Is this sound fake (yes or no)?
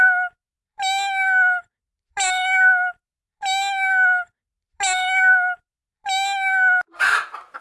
no